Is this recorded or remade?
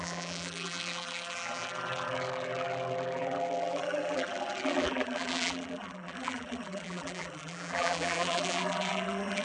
remade